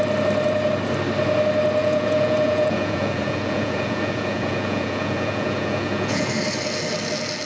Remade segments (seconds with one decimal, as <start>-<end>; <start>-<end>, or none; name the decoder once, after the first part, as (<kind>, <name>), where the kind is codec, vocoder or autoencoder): 1.8-6.3 (vocoder, Vocos)